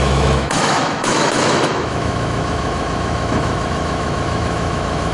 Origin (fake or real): fake